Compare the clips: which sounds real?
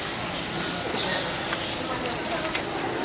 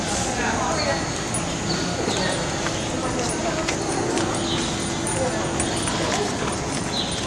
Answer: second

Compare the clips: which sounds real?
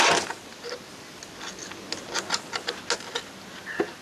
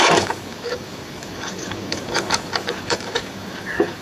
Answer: first